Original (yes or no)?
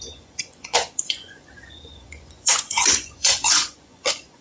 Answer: no